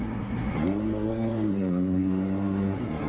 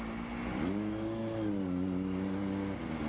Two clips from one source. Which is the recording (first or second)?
second